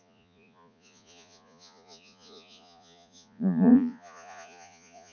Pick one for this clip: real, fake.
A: fake